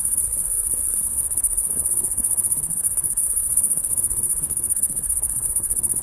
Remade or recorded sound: remade